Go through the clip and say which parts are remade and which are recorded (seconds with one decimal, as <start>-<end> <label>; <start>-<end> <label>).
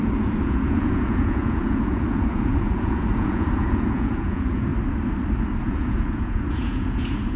0.0-4.7 remade; 4.7-5.6 recorded; 5.6-7.4 remade